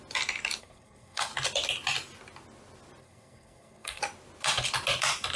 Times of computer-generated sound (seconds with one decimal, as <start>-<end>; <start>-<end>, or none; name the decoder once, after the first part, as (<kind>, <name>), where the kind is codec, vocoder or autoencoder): 0.6-1.3 (codec, SNAC); 3.0-4.0